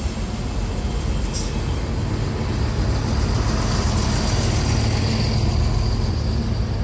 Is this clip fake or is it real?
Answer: real